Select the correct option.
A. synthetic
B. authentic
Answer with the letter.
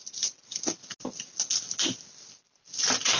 B